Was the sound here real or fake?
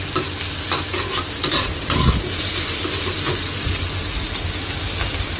real